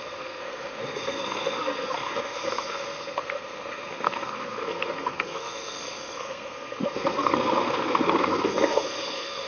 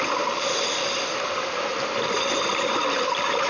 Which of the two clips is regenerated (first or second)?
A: first